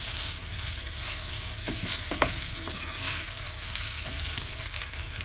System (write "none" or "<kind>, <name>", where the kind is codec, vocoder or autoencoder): codec, SNAC